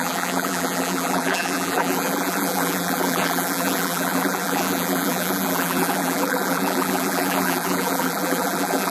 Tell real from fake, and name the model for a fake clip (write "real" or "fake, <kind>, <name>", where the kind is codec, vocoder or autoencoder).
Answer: fake, vocoder, BigVGAN v2